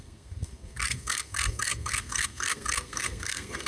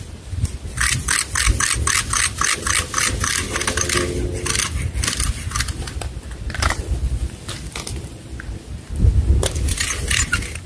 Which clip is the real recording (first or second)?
second